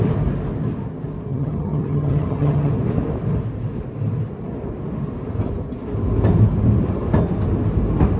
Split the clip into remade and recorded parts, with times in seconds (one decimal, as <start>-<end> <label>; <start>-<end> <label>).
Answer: 0.0-1.3 recorded; 1.3-2.7 remade; 2.7-8.2 recorded

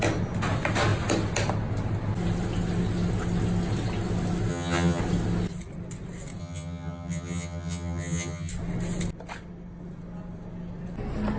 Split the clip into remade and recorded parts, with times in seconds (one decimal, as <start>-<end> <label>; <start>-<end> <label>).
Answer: 0.0-4.5 recorded; 4.5-5.0 remade; 5.0-6.4 recorded; 6.4-8.5 remade; 8.5-11.4 recorded

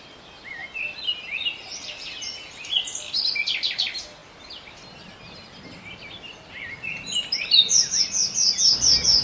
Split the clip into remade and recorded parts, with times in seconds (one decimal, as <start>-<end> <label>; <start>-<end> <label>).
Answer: 0.0-9.2 recorded